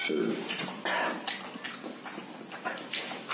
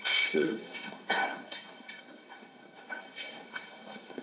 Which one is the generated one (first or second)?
second